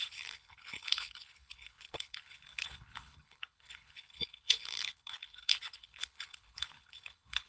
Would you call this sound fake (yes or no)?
yes